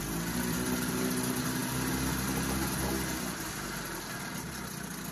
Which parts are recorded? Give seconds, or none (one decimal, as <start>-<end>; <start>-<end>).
0.0-5.1